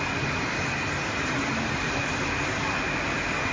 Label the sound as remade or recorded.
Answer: recorded